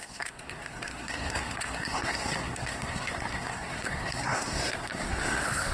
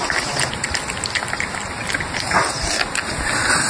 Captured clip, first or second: second